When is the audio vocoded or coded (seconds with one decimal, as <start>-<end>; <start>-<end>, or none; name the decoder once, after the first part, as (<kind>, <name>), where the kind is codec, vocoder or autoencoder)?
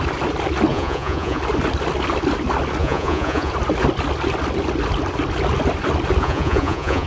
0.7-1.4 (vocoder, Vocos); 2.8-3.5; 6.2-7.1